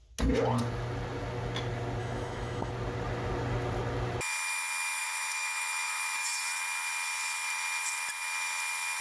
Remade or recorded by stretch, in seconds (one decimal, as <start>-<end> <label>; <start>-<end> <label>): 0.0-2.0 recorded; 2.0-2.7 remade; 2.7-5.0 recorded; 5.0-6.4 remade; 6.4-9.0 recorded